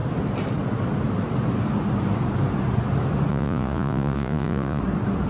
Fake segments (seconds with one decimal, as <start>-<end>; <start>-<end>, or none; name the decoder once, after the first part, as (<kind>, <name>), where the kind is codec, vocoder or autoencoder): 3.3-4.8 (vocoder, Vocos)